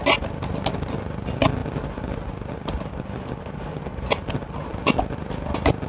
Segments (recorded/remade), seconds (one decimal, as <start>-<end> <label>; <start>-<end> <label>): 0.0-5.9 recorded

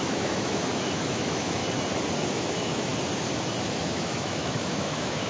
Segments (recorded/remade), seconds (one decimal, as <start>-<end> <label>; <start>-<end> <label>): 0.0-1.6 remade; 1.6-2.3 recorded; 2.3-2.9 remade; 2.9-3.8 recorded; 3.8-5.3 remade

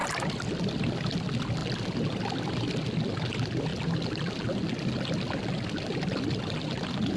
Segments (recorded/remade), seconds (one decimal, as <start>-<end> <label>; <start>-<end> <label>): 0.0-7.2 recorded

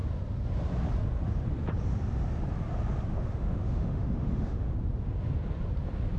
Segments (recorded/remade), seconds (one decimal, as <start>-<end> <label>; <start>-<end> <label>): 0.0-3.1 recorded; 3.1-4.7 remade; 4.7-6.2 recorded

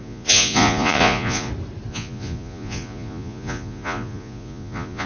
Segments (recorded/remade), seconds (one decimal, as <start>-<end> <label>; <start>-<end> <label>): 0.0-1.5 remade; 1.5-1.9 recorded; 1.9-5.1 remade